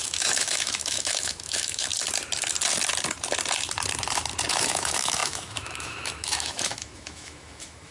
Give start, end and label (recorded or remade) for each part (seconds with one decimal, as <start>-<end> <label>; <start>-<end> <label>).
0.0-1.9 remade; 1.9-4.5 recorded; 4.5-7.9 remade